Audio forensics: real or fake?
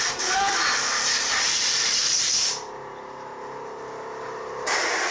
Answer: fake